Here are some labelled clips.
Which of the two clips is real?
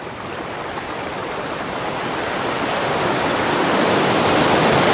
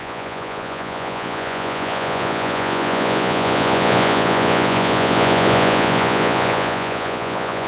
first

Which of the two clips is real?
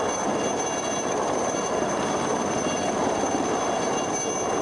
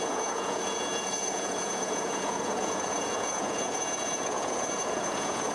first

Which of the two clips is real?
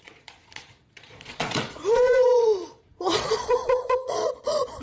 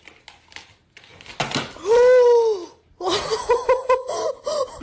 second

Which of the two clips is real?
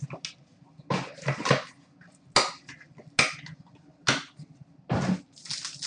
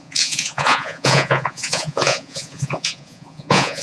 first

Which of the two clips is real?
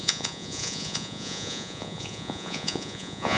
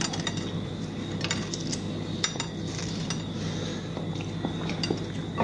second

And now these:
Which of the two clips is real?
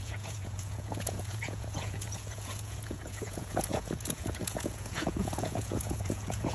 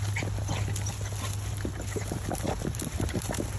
second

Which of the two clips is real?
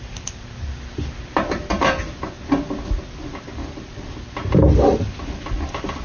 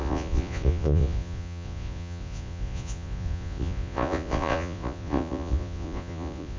first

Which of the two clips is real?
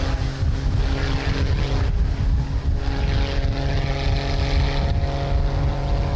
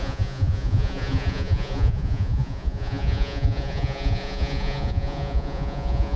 first